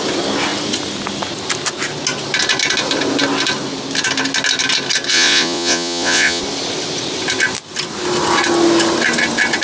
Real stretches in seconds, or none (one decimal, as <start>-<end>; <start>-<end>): 0.0-5.1; 6.4-9.6